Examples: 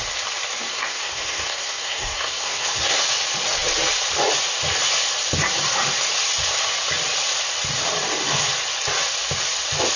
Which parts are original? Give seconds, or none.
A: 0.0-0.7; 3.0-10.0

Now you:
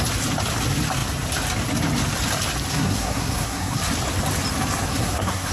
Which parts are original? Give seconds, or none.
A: 0.0-2.7; 3.8-4.9

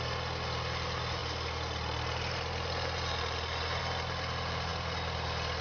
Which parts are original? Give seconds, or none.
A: 0.0-5.6

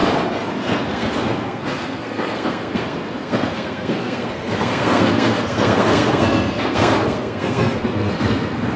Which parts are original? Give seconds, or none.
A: 0.0-0.5